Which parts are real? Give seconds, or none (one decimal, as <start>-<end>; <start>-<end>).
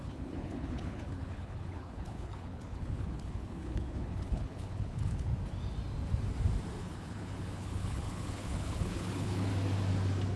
5.3-6.8; 9.5-10.4